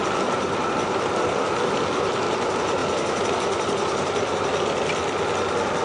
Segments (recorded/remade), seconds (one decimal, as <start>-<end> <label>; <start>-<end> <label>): 0.0-5.8 recorded